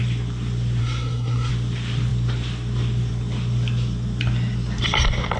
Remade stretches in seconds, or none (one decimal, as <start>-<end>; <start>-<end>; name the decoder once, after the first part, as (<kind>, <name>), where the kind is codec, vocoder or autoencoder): 0.8-1.5 (codec, SNAC)

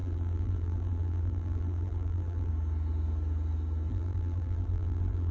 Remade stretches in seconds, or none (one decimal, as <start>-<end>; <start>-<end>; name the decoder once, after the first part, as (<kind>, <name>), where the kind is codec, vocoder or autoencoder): 0.0-2.5 (vocoder, BigVGAN v2); 3.9-5.3

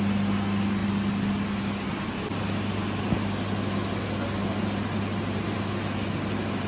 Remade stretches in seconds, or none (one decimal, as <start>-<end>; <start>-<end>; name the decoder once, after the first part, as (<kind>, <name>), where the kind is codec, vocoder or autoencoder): none

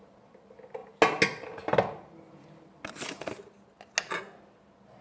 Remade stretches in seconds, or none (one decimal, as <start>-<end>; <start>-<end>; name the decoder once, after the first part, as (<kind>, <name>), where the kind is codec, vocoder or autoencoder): none